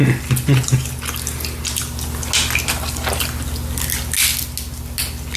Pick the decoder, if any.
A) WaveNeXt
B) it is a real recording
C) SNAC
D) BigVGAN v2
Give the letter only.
B